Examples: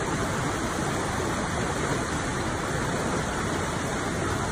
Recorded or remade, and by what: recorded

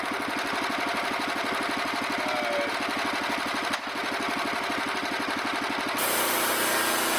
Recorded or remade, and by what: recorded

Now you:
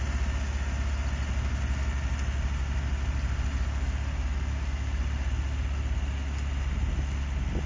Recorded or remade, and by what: recorded